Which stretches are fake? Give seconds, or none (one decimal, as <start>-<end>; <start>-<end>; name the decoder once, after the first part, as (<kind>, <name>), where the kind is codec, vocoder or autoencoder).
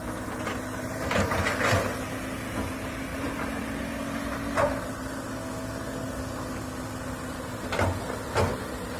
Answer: none